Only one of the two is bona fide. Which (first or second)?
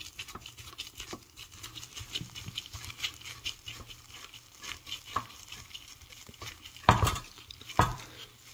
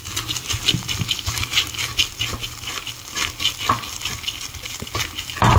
second